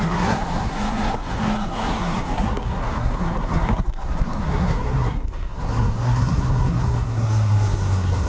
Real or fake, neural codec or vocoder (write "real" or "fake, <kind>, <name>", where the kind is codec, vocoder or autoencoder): fake, codec, SNAC